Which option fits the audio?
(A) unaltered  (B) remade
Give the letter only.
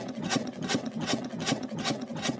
B